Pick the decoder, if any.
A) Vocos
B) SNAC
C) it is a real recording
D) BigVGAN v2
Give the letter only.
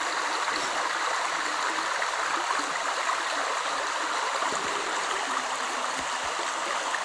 C